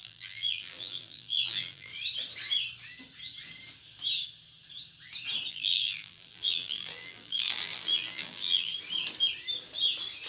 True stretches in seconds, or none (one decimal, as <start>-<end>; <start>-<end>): 1.9-5.5; 8.7-10.3